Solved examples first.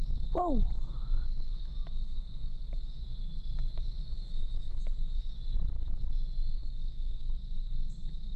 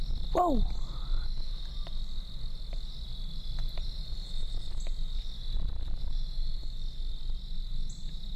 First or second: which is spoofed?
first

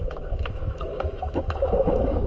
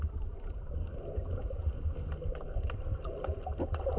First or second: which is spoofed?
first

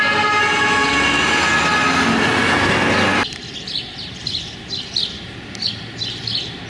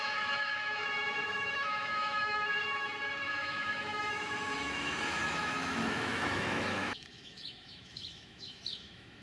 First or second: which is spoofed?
second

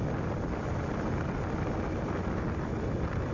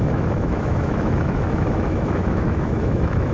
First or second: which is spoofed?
second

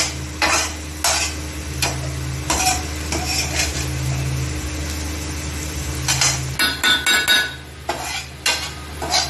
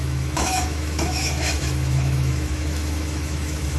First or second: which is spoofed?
second